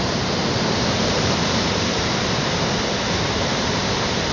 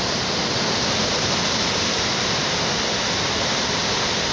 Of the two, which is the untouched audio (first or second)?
second